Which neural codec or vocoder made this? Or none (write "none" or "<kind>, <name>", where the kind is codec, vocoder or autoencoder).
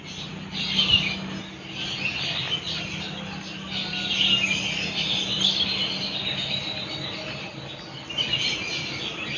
none